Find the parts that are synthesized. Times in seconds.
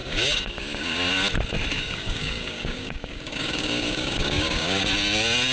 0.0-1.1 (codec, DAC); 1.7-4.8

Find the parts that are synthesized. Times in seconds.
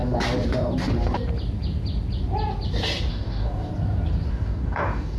3.1-3.7 (codec, DAC); 4.3-5.2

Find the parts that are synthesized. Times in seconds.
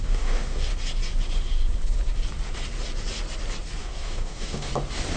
0.0-0.7 (codec, DAC); 3.8-4.7